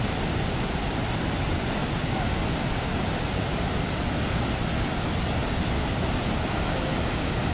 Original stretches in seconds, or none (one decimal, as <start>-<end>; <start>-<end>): 0.0-7.5